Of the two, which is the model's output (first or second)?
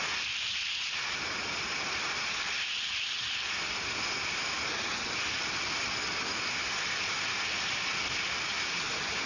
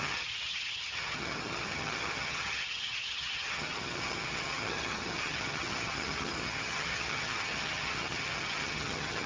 second